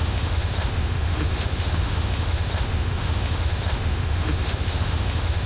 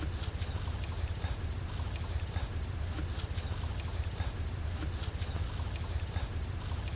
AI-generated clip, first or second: first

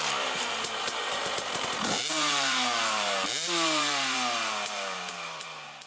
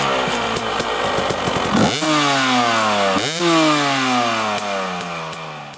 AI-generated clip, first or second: first